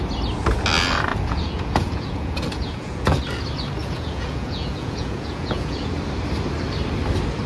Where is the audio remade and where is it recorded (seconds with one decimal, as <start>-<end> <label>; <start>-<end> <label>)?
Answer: 0.0-1.1 recorded; 1.1-3.2 remade; 3.2-3.8 recorded; 3.8-5.9 remade; 5.9-7.5 recorded